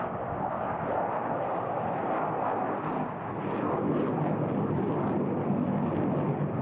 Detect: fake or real real